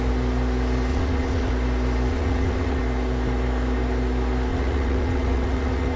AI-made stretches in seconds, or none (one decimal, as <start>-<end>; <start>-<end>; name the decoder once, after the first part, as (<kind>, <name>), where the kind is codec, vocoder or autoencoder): 0.9-1.5 (vocoder, WaveNeXt); 2.1-2.8; 4.5-6.0